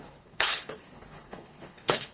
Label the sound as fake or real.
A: fake